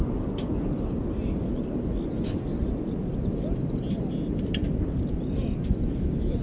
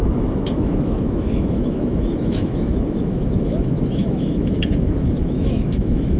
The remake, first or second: second